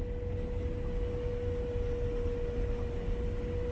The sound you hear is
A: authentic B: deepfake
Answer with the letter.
A